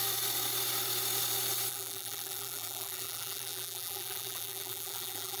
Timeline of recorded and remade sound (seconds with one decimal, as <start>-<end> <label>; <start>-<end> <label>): 0.0-1.7 recorded; 1.7-5.4 remade